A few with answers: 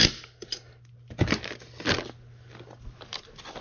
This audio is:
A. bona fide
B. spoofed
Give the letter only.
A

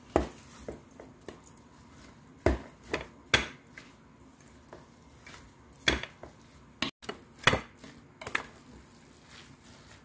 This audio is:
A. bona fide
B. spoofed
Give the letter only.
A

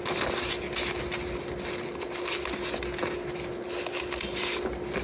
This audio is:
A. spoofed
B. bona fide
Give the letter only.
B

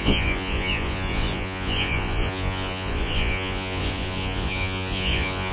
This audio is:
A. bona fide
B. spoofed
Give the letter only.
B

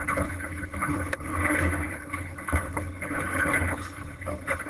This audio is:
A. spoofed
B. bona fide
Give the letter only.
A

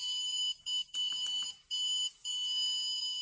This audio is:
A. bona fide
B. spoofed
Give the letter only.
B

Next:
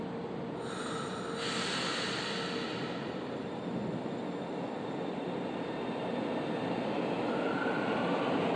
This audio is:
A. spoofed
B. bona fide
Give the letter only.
B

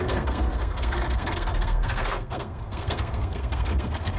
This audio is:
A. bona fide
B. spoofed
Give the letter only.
B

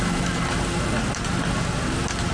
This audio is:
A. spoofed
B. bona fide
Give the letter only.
B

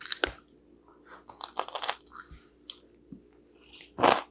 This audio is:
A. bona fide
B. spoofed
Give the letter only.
A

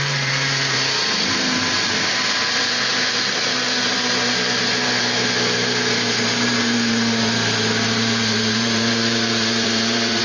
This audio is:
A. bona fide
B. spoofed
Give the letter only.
B